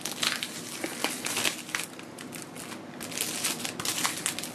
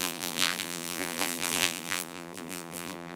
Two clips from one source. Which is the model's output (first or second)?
second